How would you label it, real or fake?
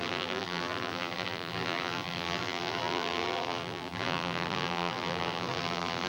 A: fake